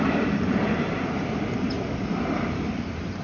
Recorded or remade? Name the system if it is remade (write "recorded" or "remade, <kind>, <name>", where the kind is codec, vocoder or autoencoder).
remade, vocoder, BigVGAN v2